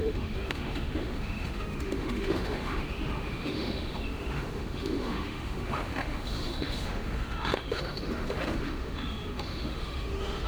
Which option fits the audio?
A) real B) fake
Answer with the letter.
B